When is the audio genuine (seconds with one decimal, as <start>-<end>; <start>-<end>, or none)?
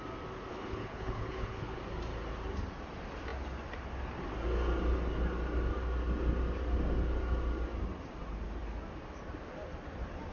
0.0-0.5; 1.8-10.3